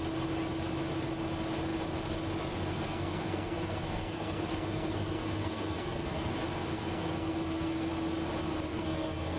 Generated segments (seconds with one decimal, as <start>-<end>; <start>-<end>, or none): 2.7-6.3; 6.7-7.9; 8.7-9.4

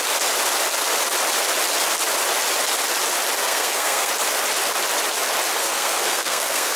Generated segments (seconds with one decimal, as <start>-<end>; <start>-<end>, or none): 3.4-4.1; 5.6-6.8

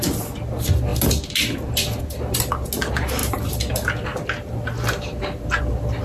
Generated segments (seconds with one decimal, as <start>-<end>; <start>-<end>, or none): none

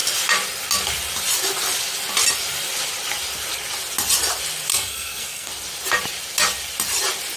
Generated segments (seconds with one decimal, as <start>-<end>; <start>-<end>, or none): 4.7-5.5

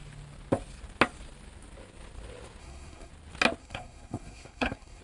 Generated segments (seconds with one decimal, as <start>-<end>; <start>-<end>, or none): 2.6-3.1; 3.6-5.0

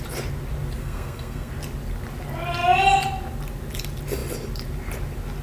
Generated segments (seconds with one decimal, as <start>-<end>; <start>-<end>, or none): 0.8-1.5

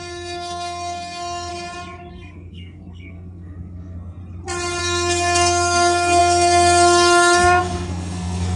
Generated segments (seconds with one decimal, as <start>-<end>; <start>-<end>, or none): 0.0-1.5; 2.1-4.2; 4.8-8.6